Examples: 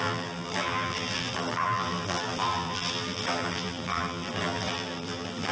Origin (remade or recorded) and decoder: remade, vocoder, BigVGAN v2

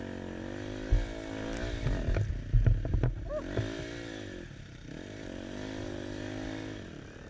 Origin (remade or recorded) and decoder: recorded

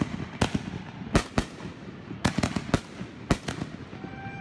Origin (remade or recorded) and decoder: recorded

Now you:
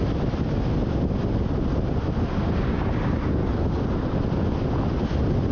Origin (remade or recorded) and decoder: recorded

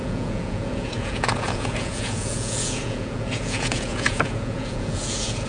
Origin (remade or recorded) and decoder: remade, vocoder, Vocos